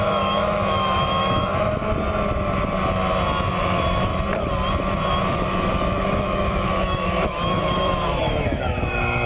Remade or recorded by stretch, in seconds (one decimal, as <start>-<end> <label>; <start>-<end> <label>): 0.0-1.8 remade; 1.8-3.6 recorded; 3.6-4.1 remade; 4.1-5.3 recorded; 5.3-9.3 remade